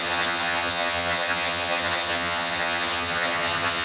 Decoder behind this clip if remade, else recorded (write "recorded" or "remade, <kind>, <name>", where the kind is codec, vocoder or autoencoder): remade, vocoder, HiFi-GAN